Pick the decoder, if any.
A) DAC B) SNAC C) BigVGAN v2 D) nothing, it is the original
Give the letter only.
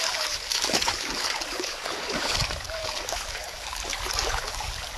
A